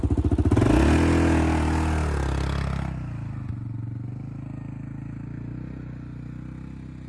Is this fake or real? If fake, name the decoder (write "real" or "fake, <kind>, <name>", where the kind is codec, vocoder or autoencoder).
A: real